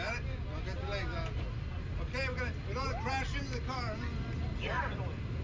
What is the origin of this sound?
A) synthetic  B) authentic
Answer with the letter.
B